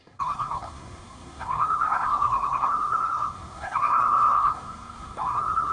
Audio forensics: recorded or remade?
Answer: remade